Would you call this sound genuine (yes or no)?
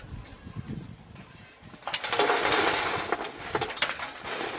yes